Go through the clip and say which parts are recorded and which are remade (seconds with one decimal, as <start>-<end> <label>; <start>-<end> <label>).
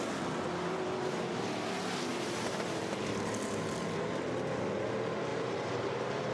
0.0-2.1 recorded; 2.1-2.9 remade; 2.9-5.3 recorded; 5.3-6.3 remade